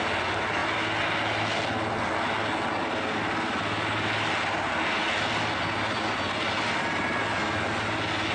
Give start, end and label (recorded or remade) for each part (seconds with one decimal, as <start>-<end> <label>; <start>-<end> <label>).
0.0-8.3 recorded